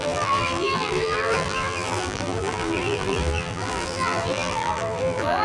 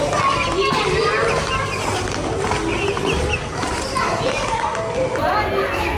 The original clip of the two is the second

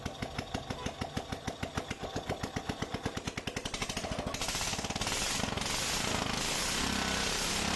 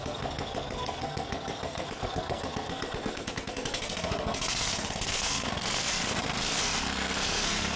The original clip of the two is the first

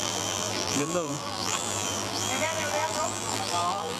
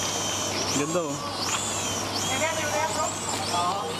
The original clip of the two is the second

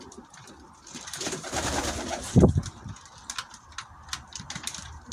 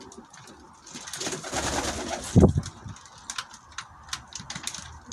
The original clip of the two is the second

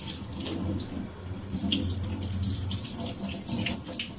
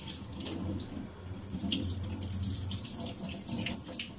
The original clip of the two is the first